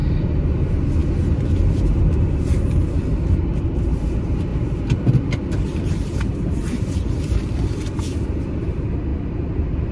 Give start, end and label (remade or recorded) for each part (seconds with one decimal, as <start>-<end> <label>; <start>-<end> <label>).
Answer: 0.0-0.6 remade; 0.6-9.1 recorded; 9.1-9.9 remade